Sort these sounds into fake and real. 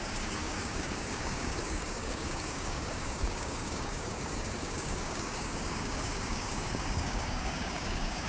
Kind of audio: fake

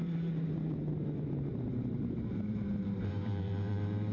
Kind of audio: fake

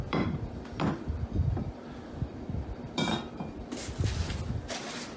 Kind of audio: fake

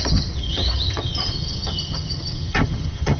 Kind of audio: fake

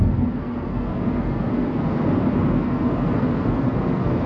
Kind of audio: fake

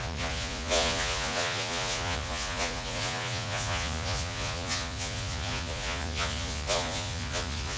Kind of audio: fake